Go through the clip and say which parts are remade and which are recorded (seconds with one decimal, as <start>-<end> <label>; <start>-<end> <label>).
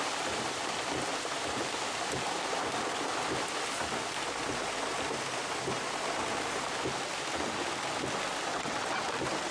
0.0-8.5 recorded; 8.5-9.1 remade; 9.1-9.5 recorded